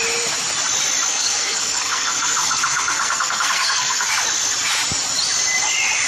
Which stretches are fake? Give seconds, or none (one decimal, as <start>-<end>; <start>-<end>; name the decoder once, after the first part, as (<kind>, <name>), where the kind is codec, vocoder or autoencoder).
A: 1.1-4.1 (codec, SNAC)